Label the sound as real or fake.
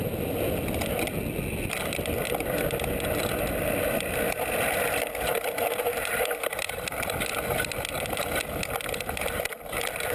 real